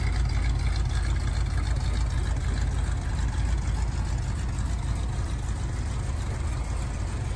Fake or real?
real